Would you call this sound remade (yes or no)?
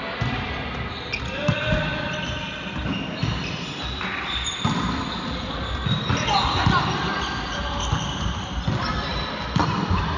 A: no